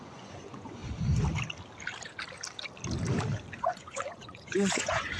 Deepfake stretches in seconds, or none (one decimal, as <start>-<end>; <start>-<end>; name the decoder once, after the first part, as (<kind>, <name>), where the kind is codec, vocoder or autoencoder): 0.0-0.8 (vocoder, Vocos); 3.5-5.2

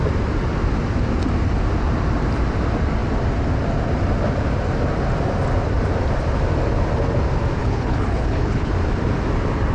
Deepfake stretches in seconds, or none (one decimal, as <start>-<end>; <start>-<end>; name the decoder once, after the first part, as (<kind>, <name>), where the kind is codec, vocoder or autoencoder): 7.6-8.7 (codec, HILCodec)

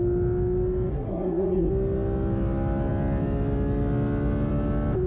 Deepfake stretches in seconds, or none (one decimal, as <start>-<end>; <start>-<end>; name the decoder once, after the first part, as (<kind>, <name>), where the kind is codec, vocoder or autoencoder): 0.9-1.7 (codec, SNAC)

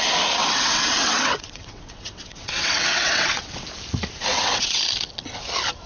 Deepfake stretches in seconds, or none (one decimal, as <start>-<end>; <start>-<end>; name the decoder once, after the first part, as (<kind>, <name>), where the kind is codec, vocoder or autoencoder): 0.4-3.6 (vocoder, WaveNeXt); 4.3-4.8

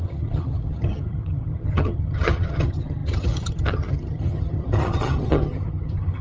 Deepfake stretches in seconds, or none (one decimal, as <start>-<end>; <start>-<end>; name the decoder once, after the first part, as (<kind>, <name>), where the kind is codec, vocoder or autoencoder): 0.0-6.2 (vocoder, HiFi-GAN)

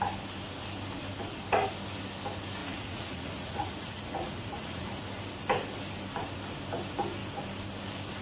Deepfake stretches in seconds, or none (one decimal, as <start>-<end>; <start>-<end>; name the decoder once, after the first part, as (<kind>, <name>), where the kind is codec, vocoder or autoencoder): 2.6-5.0 (vocoder, Vocos)